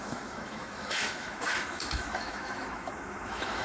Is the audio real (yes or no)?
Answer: no